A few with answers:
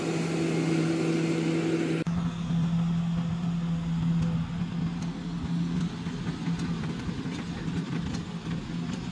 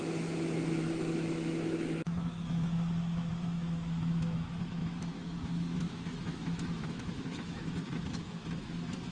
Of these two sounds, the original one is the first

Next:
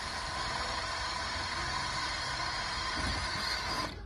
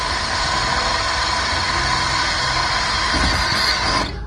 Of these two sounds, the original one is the second